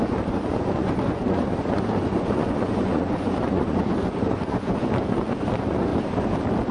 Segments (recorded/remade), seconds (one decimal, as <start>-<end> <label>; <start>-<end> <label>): 0.0-5.9 remade; 5.9-6.7 recorded

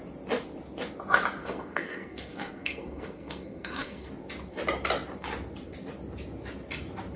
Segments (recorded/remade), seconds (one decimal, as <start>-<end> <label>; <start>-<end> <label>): 0.0-1.4 recorded; 1.4-4.1 remade; 4.1-7.2 recorded

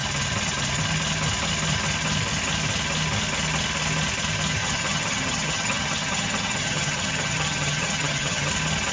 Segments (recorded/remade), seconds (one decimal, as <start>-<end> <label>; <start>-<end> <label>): 0.0-4.6 recorded; 4.6-8.5 remade; 8.5-8.9 recorded

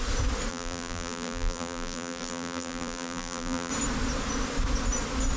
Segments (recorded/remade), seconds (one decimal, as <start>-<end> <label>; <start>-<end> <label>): 0.0-0.5 recorded; 0.5-3.7 remade; 3.7-5.4 recorded